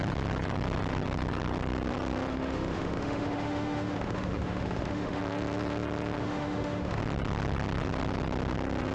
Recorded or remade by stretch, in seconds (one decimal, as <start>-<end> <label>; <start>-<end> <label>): 0.0-2.3 recorded; 2.3-5.2 remade; 5.2-6.2 recorded; 6.2-7.0 remade; 7.0-8.9 recorded